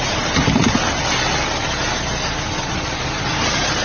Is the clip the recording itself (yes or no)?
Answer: yes